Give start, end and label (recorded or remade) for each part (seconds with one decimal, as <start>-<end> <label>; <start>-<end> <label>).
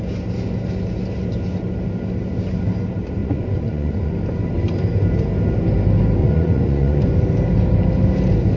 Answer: 0.0-3.2 recorded; 3.2-4.1 remade; 4.1-6.2 recorded; 6.2-7.0 remade; 7.0-8.6 recorded